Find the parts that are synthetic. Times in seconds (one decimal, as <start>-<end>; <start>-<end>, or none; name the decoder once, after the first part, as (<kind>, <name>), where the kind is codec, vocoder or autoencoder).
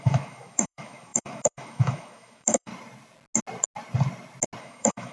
0.0-2.7 (autoencoder, DAC-VAE); 4.6-5.1